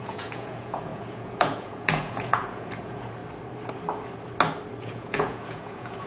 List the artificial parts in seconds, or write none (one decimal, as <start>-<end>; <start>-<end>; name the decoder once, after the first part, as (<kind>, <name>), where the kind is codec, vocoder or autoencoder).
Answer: 0.0-3.2 (vocoder, Vocos); 4.8-6.1